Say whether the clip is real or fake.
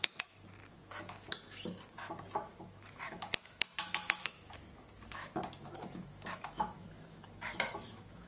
fake